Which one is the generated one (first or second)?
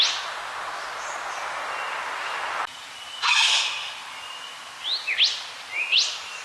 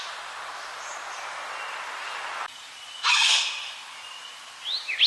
second